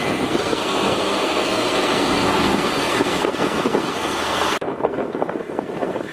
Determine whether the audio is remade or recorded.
remade